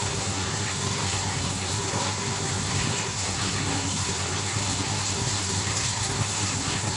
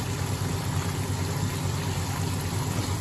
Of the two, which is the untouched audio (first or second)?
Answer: second